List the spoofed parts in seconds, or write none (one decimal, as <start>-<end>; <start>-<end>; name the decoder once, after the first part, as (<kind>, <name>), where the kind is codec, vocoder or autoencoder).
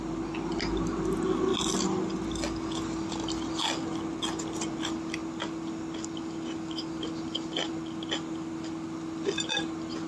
5.2-7.7 (vocoder, BigVGAN v2)